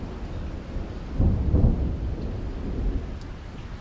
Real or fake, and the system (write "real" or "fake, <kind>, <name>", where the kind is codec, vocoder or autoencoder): real